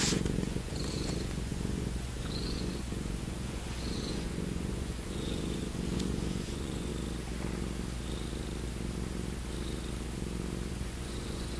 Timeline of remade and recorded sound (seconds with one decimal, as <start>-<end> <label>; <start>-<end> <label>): 0.0-6.9 remade; 6.9-10.7 recorded; 10.7-11.6 remade